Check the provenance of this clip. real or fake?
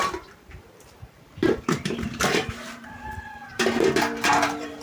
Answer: fake